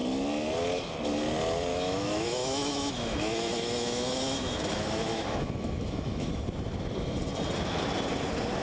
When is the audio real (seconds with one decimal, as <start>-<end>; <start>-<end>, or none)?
0.0-1.7; 6.4-8.6